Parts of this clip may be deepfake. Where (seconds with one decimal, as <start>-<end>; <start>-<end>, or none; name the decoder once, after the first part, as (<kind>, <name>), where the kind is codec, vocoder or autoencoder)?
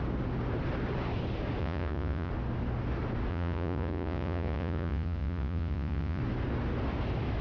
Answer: 1.6-2.3 (vocoder, Vocos); 3.3-6.2